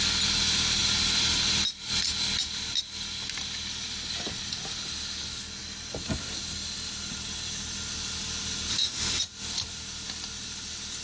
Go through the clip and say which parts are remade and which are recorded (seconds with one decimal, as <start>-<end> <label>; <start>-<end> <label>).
0.0-8.7 recorded; 8.7-9.2 remade; 9.2-11.0 recorded